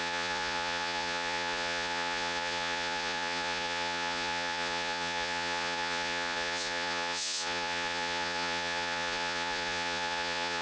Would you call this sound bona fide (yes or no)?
no